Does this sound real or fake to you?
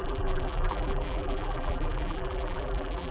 fake